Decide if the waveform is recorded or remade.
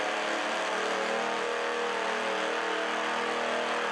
recorded